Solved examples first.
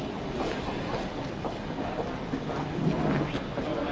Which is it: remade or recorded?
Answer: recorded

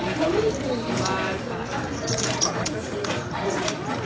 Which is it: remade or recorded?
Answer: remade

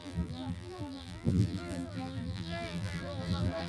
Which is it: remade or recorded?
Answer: remade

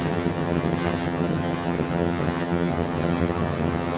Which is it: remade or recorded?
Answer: remade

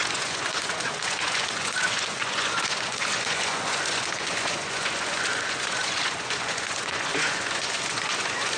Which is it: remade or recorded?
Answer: remade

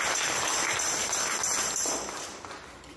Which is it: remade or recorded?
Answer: recorded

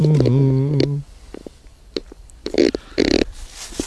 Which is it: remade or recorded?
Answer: remade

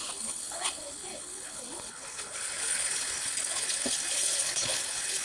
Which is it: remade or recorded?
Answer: remade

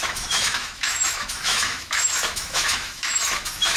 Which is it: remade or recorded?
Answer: remade